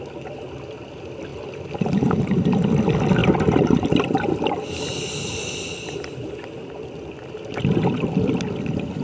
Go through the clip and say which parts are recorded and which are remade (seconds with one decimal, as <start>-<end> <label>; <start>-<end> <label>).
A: 0.0-9.0 recorded